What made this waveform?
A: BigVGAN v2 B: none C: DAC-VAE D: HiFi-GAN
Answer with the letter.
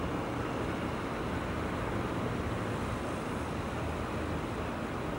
B